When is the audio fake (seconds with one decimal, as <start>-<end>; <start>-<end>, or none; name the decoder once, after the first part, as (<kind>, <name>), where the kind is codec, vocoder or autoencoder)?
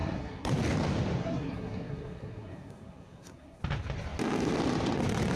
0.0-0.5 (codec, SNAC); 1.2-3.6